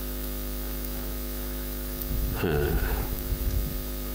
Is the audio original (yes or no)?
no